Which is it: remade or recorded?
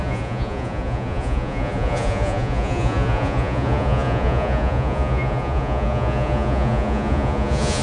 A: remade